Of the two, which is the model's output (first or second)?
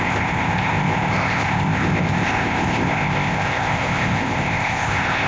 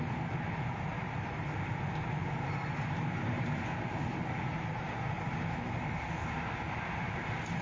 first